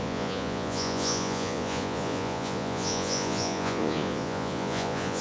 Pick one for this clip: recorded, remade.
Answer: remade